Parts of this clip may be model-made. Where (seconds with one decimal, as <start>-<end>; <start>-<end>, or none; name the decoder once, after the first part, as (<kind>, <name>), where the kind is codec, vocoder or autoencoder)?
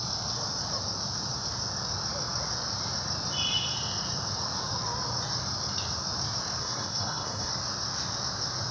6.6-7.5 (codec, SNAC)